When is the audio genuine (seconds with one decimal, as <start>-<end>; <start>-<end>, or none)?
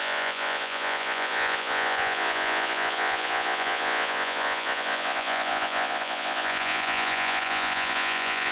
none